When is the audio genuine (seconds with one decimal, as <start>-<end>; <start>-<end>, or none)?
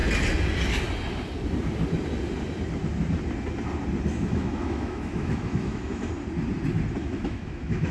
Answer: 0.0-4.1; 6.1-7.0